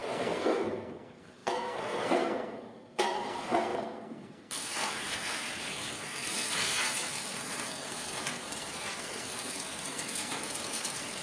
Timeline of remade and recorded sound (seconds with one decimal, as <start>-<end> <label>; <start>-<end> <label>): 0.0-11.2 remade